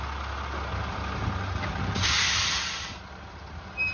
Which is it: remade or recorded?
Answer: recorded